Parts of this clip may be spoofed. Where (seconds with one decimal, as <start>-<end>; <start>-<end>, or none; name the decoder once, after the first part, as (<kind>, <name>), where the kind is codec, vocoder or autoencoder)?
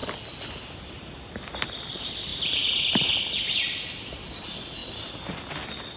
2.3-2.8 (vocoder, BigVGAN v2)